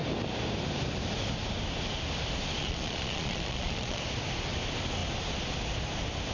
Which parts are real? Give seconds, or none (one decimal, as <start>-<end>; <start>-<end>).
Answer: 0.0-2.6; 4.0-6.3